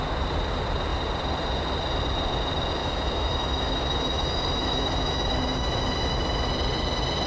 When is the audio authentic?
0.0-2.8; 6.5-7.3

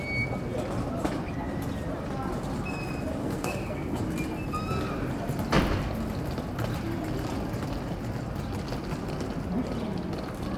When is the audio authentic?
0.0-3.2; 4.0-10.6

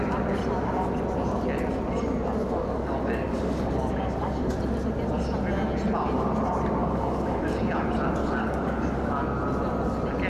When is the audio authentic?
0.0-2.4; 4.5-6.8; 7.5-8.2; 9.2-10.3

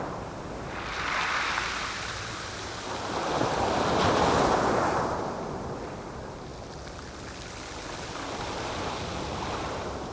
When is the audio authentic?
0.0-10.1

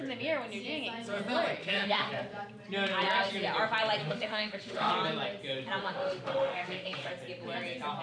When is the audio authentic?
0.0-1.6; 2.1-4.0; 4.9-5.8; 7.1-8.0

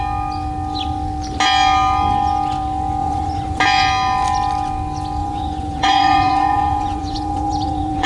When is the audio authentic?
0.0-3.0; 3.6-5.2